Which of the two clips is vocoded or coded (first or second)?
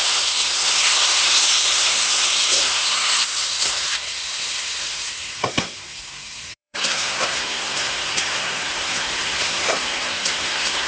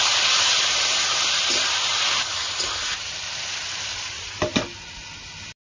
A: first